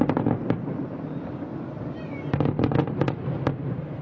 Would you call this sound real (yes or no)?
yes